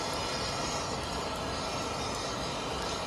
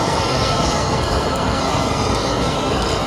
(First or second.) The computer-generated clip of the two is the second